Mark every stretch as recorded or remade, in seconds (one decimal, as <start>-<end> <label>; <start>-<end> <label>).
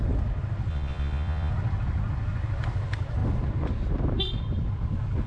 0.0-0.7 recorded; 0.7-1.5 remade; 1.5-5.3 recorded